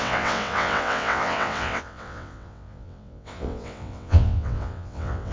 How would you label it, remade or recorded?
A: remade